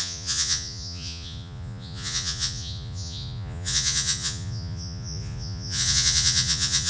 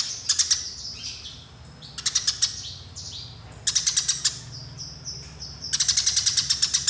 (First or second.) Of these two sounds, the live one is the second